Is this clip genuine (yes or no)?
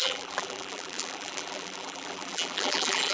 no